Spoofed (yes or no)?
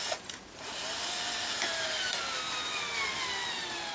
no